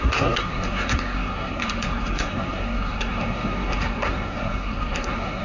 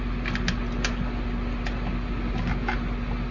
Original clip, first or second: second